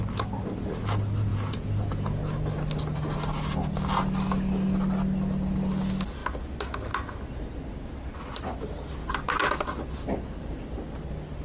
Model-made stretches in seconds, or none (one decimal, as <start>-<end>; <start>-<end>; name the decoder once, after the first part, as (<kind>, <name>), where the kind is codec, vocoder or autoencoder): 1.3-2.2 (vocoder, Vocos)